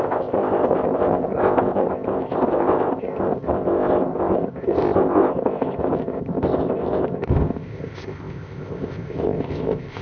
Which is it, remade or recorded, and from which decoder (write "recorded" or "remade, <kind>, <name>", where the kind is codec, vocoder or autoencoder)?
remade, codec, ZipCodec